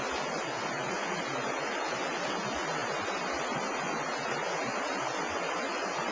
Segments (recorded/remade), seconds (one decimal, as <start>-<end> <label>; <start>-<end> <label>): 0.0-6.1 recorded